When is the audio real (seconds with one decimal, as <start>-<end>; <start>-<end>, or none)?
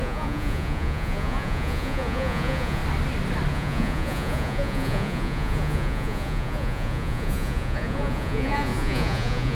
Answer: 2.8-3.5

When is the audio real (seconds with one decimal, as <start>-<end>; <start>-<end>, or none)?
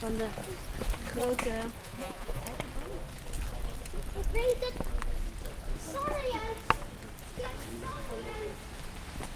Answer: 0.0-1.8; 2.4-9.4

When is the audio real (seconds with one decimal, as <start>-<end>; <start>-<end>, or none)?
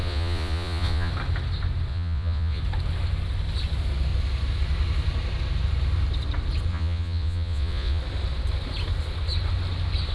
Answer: 1.1-1.9; 2.6-6.7; 8.0-10.1